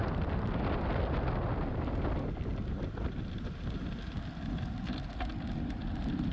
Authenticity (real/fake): real